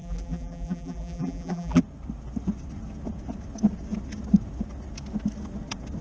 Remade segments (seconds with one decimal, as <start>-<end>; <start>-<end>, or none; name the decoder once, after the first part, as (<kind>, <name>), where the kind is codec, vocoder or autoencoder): 0.0-1.8 (vocoder, BigVGAN v2)